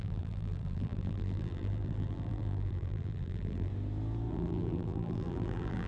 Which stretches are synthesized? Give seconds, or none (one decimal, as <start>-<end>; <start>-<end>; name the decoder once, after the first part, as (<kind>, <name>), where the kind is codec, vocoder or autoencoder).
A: 0.0-3.7 (vocoder, BigVGAN v2); 4.3-5.9